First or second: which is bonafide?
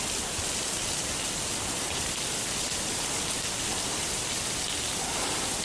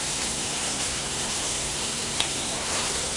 first